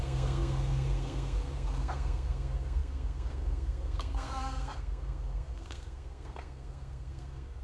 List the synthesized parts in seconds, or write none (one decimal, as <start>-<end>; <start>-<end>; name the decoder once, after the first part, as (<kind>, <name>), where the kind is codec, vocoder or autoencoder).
0.0-7.6 (codec, SNAC)